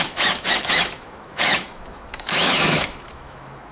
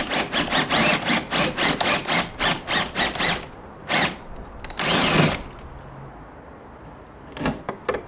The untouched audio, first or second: second